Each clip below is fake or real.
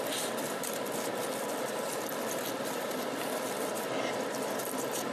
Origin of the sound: real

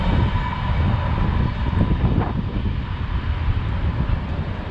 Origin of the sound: real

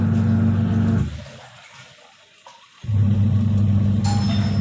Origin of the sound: real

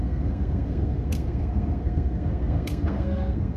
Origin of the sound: fake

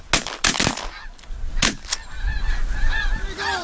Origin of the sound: real